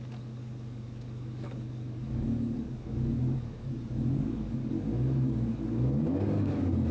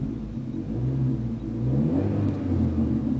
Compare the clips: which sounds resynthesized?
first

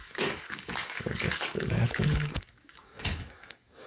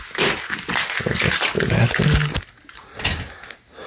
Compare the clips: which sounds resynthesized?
first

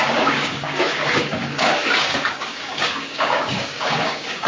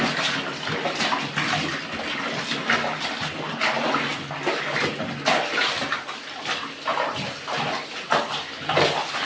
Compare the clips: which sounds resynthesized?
first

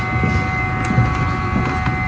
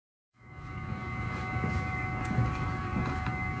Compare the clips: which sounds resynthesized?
second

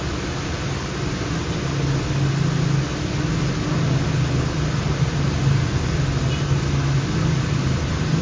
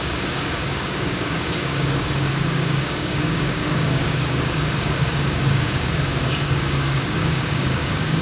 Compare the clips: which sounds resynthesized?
second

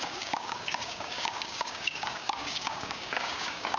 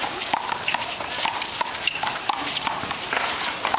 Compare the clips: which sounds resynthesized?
first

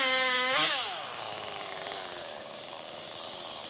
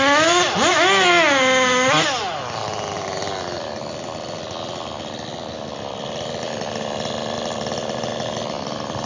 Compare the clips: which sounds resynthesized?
first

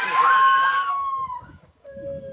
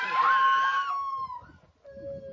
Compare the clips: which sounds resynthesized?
first